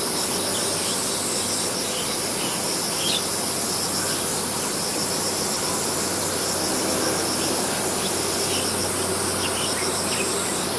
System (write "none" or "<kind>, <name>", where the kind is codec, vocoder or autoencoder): none